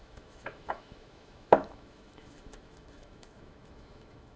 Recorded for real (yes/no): no